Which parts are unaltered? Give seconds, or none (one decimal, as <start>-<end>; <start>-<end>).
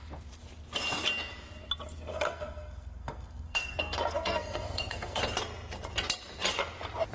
0.0-2.1; 5.2-7.1